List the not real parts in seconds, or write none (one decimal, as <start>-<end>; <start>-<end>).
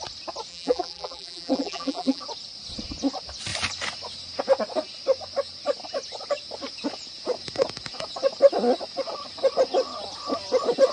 0.5-2.2